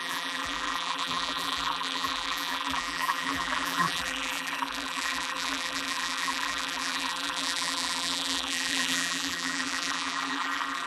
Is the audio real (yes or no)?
no